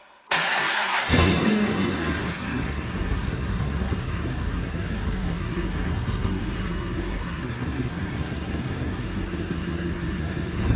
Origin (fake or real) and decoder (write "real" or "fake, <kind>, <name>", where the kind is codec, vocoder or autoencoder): fake, codec, SNAC